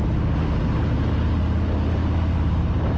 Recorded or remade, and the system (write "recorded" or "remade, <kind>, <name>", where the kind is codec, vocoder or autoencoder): recorded